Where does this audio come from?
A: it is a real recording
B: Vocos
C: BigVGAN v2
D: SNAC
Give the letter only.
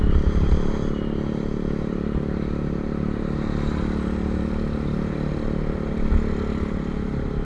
A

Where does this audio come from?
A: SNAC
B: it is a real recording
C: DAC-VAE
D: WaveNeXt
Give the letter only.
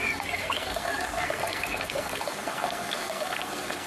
A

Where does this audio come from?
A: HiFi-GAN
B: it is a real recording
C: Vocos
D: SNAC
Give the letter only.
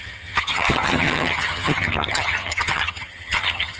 A